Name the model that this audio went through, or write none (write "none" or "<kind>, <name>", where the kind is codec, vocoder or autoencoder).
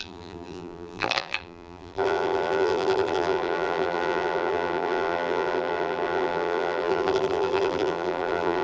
vocoder, BigVGAN v2